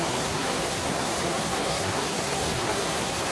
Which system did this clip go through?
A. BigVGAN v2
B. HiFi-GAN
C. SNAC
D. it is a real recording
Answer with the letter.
C